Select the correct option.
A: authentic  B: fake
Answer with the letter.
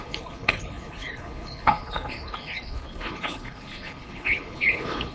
B